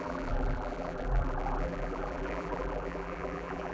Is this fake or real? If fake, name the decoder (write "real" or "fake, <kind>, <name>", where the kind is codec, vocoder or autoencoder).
fake, vocoder, BigVGAN v2